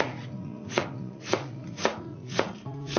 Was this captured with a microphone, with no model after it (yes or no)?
no